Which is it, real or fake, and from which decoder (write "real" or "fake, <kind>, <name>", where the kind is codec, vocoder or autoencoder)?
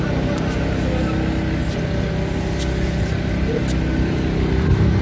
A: real